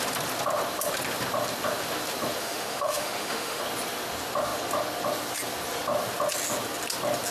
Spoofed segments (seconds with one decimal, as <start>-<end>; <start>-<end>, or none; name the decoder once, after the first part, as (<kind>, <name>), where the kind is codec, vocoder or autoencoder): 2.4-3.6 (autoencoder, DAC-VAE)

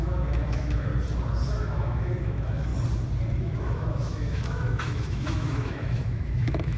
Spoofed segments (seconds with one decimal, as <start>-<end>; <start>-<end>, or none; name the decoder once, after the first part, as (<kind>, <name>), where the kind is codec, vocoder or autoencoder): 0.0-0.9 (autoencoder, DAC-VAE); 1.6-2.7; 3.4-6.8

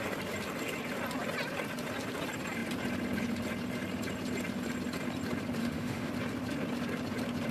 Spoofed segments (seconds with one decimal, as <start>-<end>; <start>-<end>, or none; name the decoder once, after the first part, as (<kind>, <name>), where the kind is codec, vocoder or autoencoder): 5.6-6.1 (autoencoder, DAC-VAE)

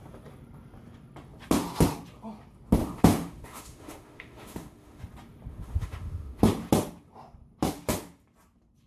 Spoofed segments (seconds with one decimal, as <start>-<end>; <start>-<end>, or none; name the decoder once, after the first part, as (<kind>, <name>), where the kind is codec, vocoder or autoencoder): 2.8-5.0 (autoencoder, DAC-VAE); 5.5-6.4

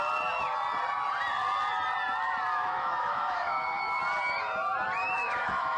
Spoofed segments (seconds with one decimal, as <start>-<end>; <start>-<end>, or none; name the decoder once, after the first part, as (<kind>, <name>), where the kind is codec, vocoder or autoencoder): 2.5-4.0 (autoencoder, DAC-VAE); 5.0-5.8

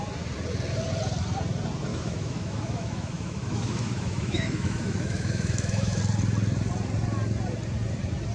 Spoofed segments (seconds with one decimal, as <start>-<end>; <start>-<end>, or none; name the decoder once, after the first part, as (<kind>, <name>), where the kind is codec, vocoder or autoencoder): 1.9-6.0 (autoencoder, DAC-VAE)